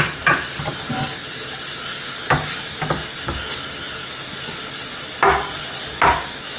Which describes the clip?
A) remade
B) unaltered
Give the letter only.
B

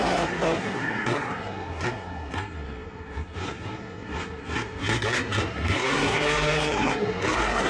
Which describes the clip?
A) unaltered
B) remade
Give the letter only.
B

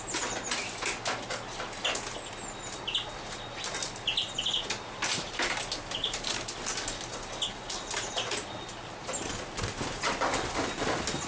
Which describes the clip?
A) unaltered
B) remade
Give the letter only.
A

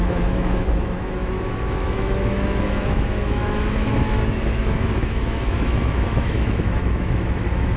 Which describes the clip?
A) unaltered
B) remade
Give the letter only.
B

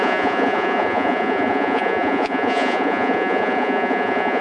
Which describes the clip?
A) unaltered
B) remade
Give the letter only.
B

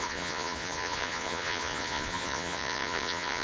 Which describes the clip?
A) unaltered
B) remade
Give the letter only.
B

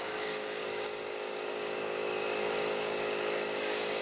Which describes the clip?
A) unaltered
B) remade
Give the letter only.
B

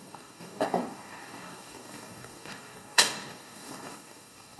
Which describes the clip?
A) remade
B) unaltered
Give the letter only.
A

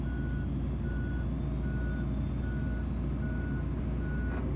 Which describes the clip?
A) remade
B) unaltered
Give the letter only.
B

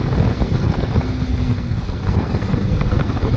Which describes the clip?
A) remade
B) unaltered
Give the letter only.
A